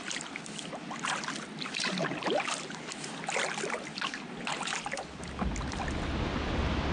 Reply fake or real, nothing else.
real